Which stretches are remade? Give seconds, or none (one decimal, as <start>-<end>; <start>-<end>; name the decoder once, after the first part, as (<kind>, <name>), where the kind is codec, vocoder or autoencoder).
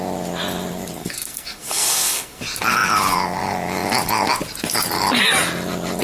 1.0-2.4 (codec, SNAC)